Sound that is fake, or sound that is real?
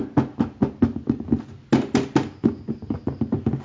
real